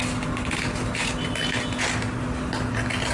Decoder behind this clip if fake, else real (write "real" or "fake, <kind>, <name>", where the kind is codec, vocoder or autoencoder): real